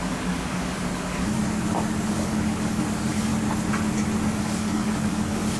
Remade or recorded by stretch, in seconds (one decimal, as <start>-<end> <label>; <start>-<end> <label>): 0.0-1.4 remade; 1.4-2.1 recorded; 2.1-3.3 remade; 3.3-4.4 recorded; 4.4-5.6 remade